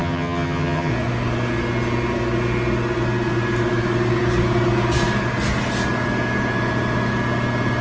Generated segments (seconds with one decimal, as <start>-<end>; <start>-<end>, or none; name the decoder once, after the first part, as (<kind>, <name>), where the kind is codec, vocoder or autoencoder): 0.0-0.9 (vocoder, HiFi-GAN)